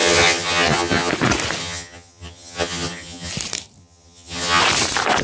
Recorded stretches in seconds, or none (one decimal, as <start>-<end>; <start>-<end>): 1.1-1.6; 3.3-3.8; 4.6-5.2